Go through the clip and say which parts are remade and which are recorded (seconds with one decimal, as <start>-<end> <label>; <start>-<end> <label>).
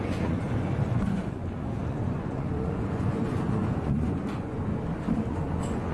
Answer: 0.0-4.7 remade; 4.7-5.3 recorded; 5.3-5.9 remade